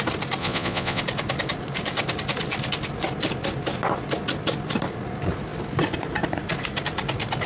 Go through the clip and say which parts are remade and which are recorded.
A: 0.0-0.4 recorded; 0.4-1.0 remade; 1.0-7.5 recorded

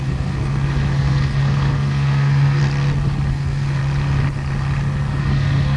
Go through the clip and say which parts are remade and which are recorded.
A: 0.0-2.6 remade; 2.6-3.3 recorded; 3.3-3.8 remade; 3.8-5.2 recorded; 5.2-5.8 remade

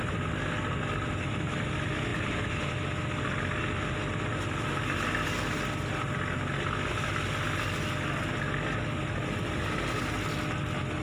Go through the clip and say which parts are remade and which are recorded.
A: 0.0-2.1 recorded; 2.1-2.7 remade; 2.7-11.0 recorded

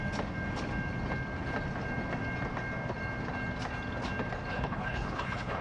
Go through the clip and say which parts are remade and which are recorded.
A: 0.0-4.5 recorded; 4.5-5.6 remade

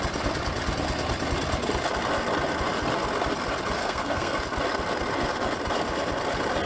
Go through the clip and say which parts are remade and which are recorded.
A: 0.0-3.8 recorded; 3.8-4.4 remade; 4.4-6.7 recorded

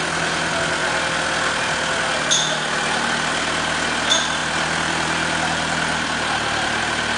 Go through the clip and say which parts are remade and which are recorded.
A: 0.0-4.4 recorded; 4.4-6.8 remade; 6.8-7.2 recorded

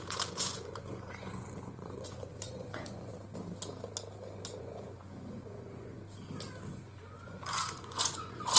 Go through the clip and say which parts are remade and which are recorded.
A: 0.0-3.1 remade; 3.1-4.6 recorded; 4.6-6.0 remade; 6.0-6.7 recorded; 6.7-8.6 remade

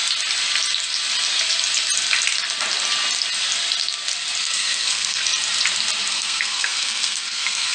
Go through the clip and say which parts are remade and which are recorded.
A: 0.0-4.4 recorded; 4.4-5.2 remade; 5.2-6.1 recorded; 6.1-7.7 remade